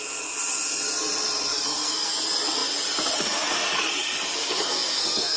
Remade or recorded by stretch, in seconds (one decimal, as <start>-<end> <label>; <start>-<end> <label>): 0.0-1.5 recorded; 1.5-2.1 remade; 2.1-4.4 recorded; 4.4-5.4 remade

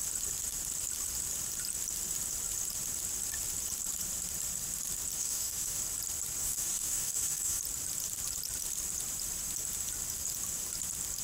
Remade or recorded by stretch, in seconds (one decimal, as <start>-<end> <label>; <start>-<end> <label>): 0.0-5.2 recorded; 5.2-5.8 remade; 5.8-6.4 recorded; 6.4-7.6 remade; 7.6-11.2 recorded

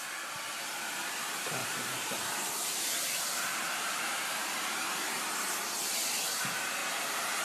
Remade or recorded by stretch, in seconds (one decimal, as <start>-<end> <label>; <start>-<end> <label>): 0.0-1.6 recorded; 1.6-5.9 remade; 5.9-7.4 recorded

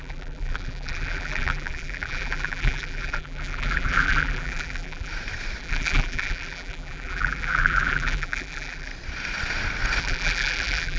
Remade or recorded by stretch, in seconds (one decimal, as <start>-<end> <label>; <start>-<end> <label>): 0.0-5.1 remade; 5.1-5.6 recorded; 5.6-8.9 remade; 8.9-10.0 recorded; 10.0-11.0 remade

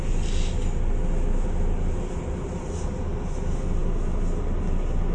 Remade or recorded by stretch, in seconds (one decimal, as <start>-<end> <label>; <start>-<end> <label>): 0.0-5.1 recorded

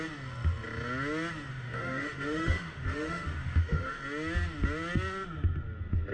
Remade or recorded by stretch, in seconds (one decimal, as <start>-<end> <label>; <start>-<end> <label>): 0.0-1.5 recorded; 1.5-4.0 remade; 4.0-6.1 recorded

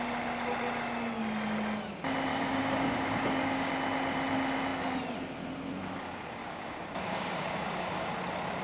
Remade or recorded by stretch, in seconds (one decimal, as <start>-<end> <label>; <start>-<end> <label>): 0.0-2.3 recorded; 2.3-3.7 remade; 3.7-6.4 recorded; 6.4-8.2 remade; 8.2-8.6 recorded

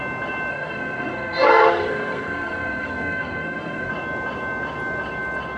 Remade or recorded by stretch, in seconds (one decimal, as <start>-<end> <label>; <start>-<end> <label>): 0.0-0.5 recorded; 0.5-3.9 remade; 3.9-5.6 recorded